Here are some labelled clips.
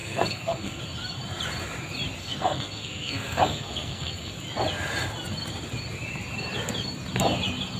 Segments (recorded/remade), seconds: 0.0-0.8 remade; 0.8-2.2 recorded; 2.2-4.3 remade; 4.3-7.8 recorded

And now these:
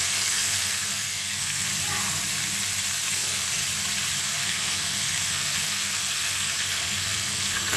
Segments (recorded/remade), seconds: 0.0-1.7 remade; 1.7-3.1 recorded; 3.1-3.6 remade; 3.6-4.2 recorded; 4.2-7.8 remade

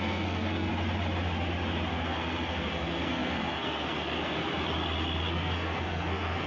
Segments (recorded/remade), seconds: 0.0-0.7 remade; 0.7-1.9 recorded; 1.9-4.4 remade; 4.4-5.3 recorded; 5.3-6.5 remade

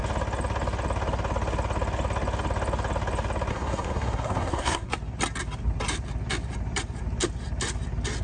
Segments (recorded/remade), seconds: 0.0-3.5 recorded; 3.5-4.9 remade; 4.9-8.2 recorded

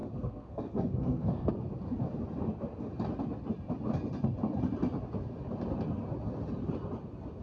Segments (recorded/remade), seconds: 0.0-1.5 remade; 1.5-7.4 recorded

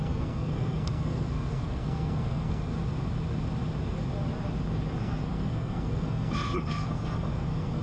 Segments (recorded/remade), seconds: 0.0-2.8 remade; 2.8-5.0 recorded; 5.0-7.8 remade